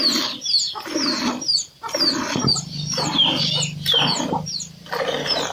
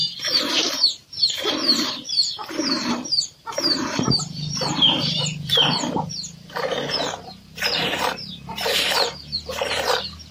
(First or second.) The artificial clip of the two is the second